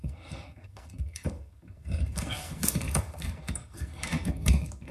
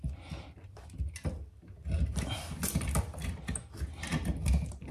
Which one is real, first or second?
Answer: second